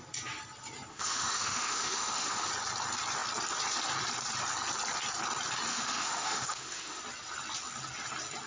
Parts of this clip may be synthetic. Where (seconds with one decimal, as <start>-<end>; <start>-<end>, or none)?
0.9-2.5; 5.7-7.0